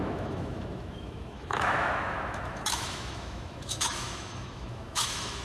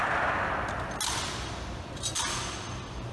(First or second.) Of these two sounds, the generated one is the first